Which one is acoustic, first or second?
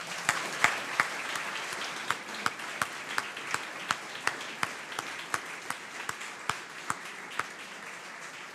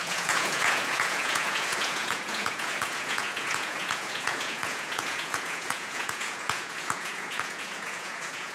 first